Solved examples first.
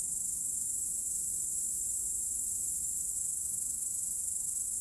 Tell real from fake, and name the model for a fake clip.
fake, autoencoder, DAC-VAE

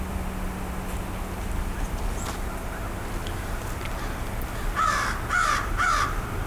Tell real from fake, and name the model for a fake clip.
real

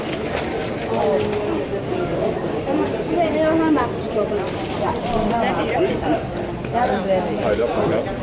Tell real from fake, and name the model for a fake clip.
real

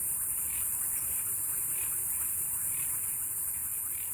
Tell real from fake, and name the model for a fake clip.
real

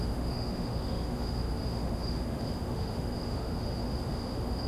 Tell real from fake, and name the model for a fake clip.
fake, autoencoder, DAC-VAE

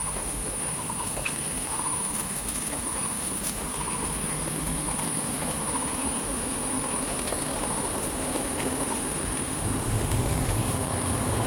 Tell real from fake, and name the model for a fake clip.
fake, autoencoder, DAC-VAE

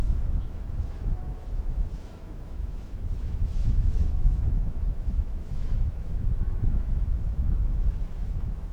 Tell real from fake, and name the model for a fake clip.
fake, autoencoder, DAC-VAE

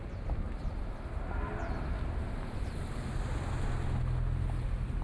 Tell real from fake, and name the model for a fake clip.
real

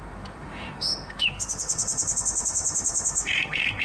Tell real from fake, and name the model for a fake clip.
fake, autoencoder, DAC-VAE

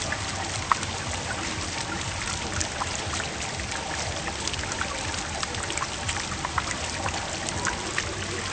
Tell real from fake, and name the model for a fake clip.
real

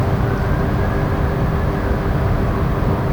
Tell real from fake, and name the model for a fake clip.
real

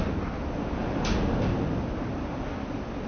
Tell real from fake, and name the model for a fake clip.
real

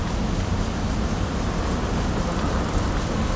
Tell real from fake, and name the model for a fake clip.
real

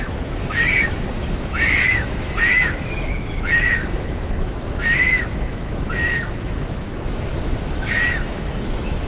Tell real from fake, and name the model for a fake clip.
fake, autoencoder, DAC-VAE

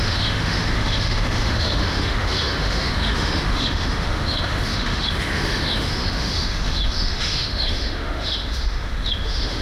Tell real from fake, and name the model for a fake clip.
fake, autoencoder, DAC-VAE